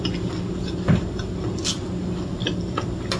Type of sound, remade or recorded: recorded